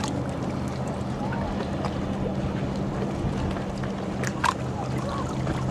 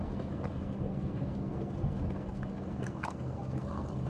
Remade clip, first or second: second